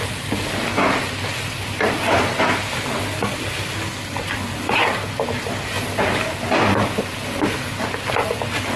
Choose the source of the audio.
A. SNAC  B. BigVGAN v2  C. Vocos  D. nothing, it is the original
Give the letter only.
D